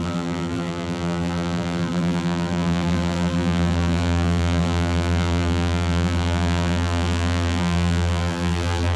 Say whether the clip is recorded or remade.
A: remade